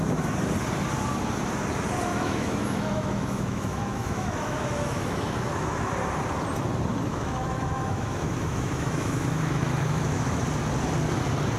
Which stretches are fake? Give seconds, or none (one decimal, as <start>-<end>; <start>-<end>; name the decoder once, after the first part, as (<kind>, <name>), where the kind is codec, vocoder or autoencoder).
2.1-5.8 (autoencoder, DAC-VAE); 7.1-10.4

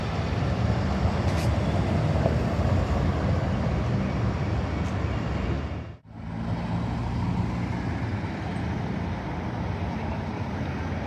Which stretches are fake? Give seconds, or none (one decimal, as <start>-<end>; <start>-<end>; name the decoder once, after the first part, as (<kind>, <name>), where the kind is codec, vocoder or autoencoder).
none

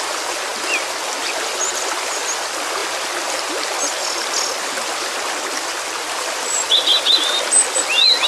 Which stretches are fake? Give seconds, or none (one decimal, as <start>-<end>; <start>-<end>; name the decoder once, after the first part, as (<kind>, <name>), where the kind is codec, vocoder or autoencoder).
none